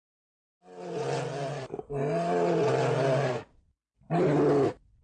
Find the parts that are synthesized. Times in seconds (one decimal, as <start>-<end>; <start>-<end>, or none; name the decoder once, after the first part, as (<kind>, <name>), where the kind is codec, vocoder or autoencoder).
0.0-0.4 (vocoder, BigVGAN v2); 3.3-5.0